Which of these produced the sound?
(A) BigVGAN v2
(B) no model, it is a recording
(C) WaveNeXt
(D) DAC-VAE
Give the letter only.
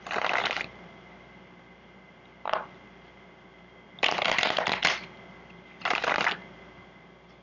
B